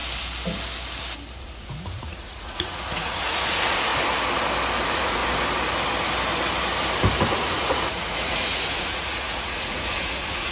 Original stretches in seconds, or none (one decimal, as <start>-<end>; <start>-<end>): 0.0-1.4; 3.9-4.8; 5.2-7.2